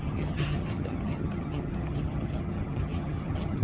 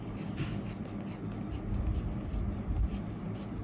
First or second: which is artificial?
first